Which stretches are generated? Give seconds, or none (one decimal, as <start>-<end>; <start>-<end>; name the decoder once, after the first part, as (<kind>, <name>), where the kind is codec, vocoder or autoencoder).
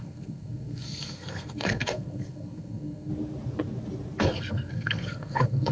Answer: 0.0-3.1 (codec, SNAC); 4.2-5.7